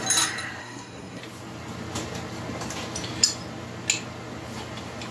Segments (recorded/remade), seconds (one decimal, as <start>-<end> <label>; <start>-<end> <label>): 0.0-0.6 recorded; 0.6-1.2 remade; 1.2-5.1 recorded